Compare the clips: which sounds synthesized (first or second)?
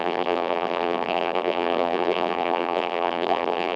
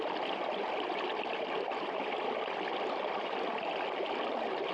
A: first